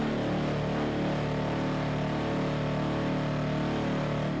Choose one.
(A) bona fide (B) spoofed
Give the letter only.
A